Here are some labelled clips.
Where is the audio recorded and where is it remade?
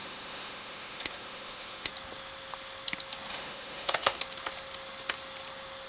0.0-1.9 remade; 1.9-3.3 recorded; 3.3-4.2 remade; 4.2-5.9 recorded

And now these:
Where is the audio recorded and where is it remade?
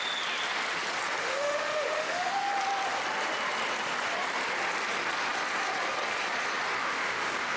0.0-1.2 recorded; 1.2-2.5 remade; 2.5-6.8 recorded; 6.8-7.6 remade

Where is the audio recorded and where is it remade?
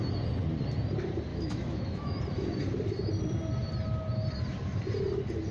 0.0-1.3 recorded; 1.3-2.2 remade; 2.2-5.5 recorded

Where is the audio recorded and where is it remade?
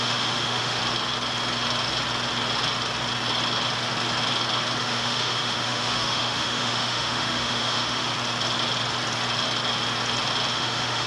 0.0-0.8 remade; 0.8-4.8 recorded; 4.8-8.1 remade; 8.1-10.5 recorded; 10.5-11.1 remade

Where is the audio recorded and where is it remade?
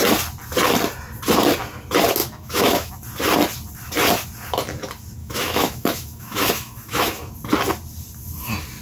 0.0-2.2 recorded; 2.2-2.9 remade; 2.9-5.2 recorded; 5.2-7.3 remade; 7.3-8.8 recorded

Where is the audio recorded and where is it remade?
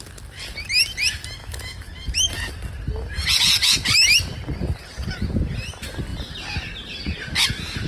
0.0-1.4 recorded; 1.4-1.9 remade; 1.9-7.9 recorded